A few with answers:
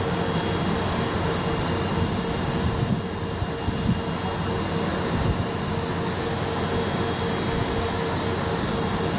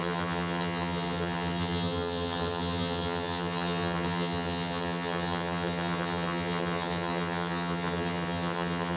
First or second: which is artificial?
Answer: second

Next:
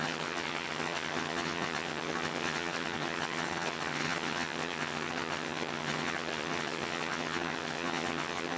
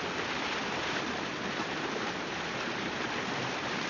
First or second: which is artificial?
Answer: first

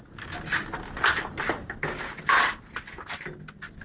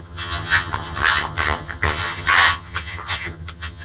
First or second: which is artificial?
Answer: second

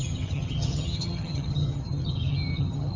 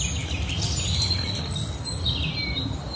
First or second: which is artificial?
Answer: first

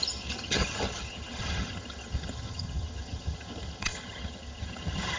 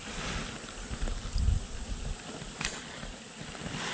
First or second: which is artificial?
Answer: first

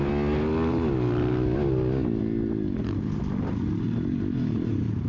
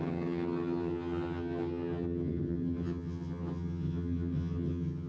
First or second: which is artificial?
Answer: second